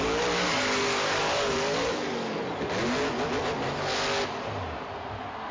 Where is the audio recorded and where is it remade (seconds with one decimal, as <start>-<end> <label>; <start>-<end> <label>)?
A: 0.0-2.4 remade; 2.4-5.5 recorded